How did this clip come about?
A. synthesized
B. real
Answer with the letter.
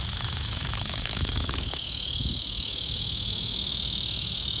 A